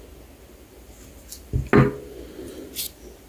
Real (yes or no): yes